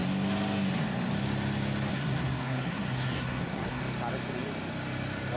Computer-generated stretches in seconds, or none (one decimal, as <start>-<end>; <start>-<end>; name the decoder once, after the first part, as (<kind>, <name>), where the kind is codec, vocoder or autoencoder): 1.9-3.8 (codec, SNAC)